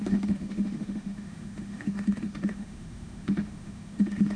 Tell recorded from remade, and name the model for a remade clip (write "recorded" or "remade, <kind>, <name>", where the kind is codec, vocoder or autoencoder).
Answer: remade, autoencoder, DAC-VAE